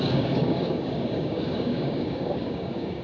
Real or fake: fake